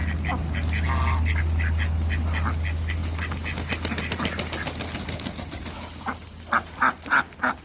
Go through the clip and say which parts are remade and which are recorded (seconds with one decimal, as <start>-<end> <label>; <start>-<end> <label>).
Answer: 0.0-7.6 recorded